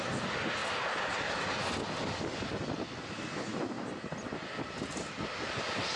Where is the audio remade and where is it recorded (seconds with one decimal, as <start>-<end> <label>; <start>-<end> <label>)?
0.0-6.0 recorded